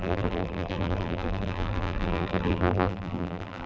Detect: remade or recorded remade